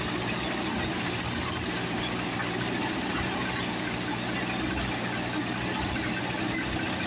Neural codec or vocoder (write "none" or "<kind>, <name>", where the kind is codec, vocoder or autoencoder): none